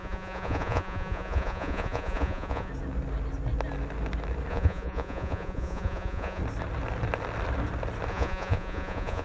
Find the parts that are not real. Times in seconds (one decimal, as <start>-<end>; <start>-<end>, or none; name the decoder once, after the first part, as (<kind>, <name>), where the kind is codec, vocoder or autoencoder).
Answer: 0.0-2.7 (vocoder, Vocos); 4.5-6.4; 8.1-9.2